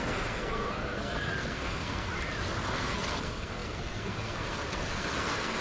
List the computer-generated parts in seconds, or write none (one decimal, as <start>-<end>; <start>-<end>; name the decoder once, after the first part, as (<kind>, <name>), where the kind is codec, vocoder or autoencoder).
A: 0.0-2.1 (codec, SNAC); 2.7-5.6